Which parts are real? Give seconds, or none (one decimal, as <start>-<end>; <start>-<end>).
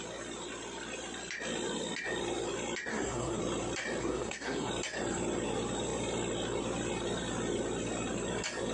0.0-2.9; 3.4-4.0; 4.7-8.7